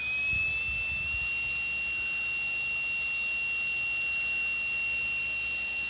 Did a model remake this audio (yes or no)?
no